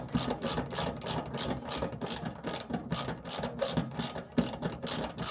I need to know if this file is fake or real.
real